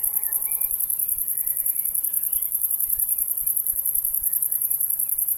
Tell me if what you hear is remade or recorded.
remade